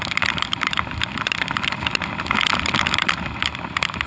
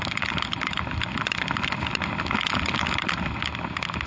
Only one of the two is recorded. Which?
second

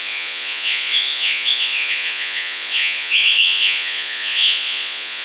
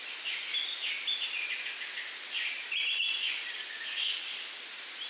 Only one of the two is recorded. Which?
second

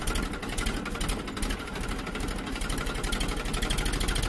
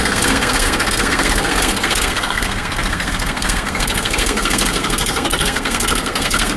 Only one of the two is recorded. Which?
first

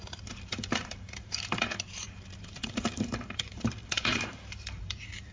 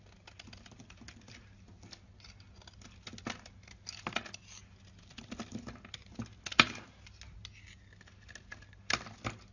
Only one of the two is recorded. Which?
second